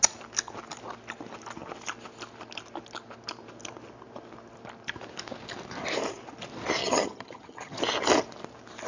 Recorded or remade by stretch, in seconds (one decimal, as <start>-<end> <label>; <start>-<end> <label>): 0.0-6.8 recorded; 6.8-7.8 remade; 7.8-8.9 recorded